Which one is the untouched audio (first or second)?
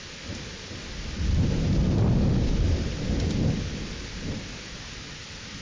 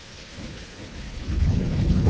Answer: first